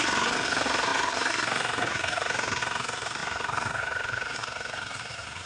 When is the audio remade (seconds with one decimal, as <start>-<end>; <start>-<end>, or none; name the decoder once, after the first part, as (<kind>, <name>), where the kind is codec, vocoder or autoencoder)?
0.0-5.5 (codec, SNAC)